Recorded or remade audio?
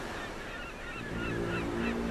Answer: recorded